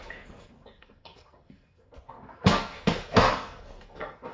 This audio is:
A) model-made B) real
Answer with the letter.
A